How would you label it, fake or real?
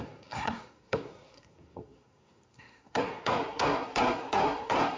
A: fake